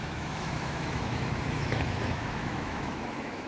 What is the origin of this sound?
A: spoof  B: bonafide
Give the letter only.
A